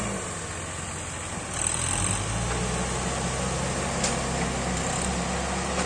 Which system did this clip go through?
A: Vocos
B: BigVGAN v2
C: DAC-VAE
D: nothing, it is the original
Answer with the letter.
D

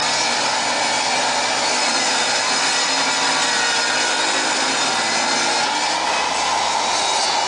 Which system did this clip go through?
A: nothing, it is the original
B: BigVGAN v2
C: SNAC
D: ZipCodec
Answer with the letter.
A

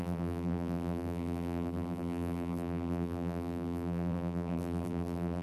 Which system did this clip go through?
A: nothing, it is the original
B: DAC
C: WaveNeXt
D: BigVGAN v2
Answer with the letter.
D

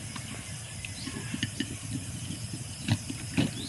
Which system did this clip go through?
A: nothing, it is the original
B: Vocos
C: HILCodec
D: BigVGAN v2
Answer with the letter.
D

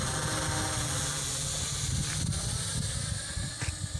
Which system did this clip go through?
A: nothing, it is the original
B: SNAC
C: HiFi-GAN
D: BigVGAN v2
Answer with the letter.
A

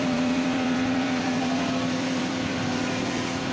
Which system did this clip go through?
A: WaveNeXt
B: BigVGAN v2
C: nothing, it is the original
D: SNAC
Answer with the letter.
B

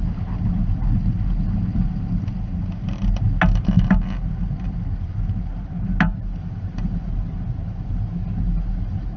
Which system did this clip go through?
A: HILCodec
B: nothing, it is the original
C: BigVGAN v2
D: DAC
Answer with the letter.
B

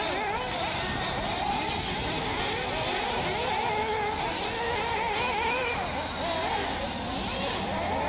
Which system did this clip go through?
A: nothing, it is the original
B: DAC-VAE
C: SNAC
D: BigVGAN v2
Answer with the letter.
A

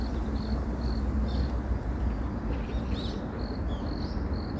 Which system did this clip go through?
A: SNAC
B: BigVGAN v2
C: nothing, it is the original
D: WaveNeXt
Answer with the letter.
C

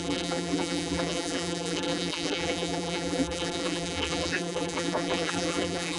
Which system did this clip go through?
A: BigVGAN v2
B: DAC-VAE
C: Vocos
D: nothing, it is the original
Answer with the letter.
A